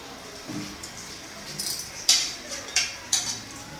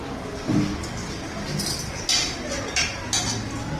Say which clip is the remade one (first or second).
first